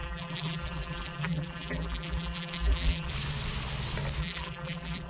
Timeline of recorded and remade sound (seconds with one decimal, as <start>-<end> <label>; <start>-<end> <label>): 0.0-3.1 remade; 3.1-4.2 recorded; 4.2-5.1 remade